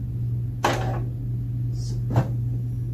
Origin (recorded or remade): recorded